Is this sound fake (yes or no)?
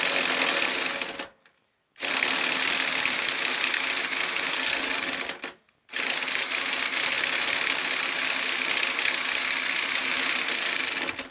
no